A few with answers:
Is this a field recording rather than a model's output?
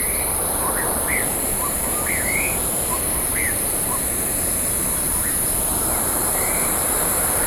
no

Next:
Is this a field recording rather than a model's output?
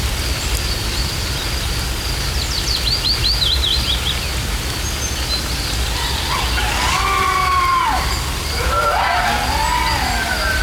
yes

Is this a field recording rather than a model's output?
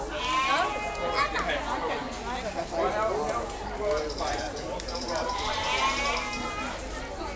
yes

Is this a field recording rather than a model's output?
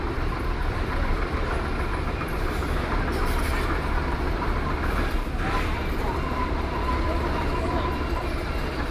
no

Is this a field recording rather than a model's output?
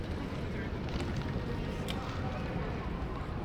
no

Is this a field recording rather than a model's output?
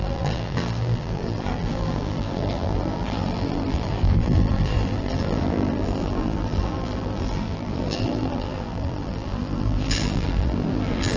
no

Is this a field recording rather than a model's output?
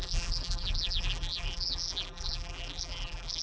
no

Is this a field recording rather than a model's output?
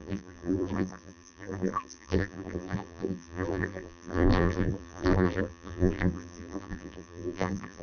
no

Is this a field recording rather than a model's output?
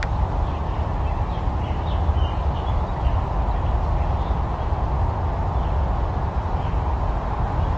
yes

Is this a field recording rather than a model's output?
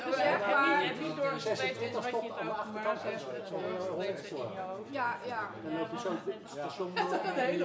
yes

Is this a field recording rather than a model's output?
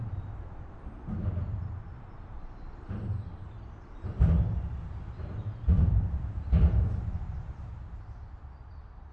no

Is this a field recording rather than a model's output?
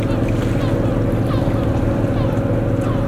yes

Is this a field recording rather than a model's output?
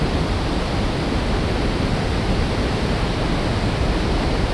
yes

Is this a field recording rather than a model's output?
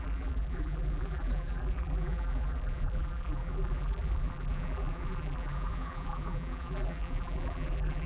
no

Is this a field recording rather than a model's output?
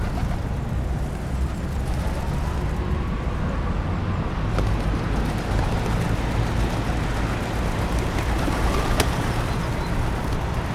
yes